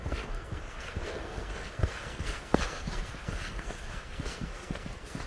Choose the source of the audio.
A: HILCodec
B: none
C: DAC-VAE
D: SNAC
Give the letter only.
D